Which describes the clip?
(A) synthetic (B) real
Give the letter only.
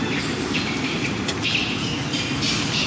B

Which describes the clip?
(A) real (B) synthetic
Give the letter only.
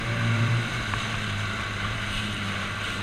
B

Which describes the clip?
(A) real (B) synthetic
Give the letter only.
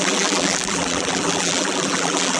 B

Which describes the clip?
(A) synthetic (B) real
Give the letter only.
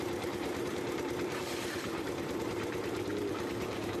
A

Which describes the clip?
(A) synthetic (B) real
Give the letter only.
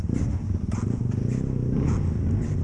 B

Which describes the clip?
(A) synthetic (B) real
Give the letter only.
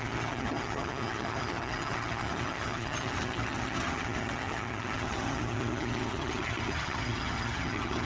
A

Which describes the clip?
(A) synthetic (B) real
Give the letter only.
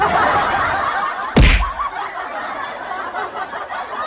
B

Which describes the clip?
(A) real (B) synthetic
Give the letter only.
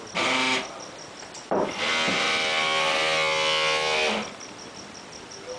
A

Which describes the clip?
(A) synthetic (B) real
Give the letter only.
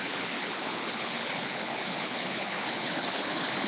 A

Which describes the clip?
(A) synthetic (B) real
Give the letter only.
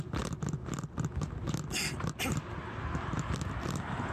B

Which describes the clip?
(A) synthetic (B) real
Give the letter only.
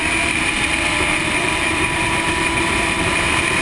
A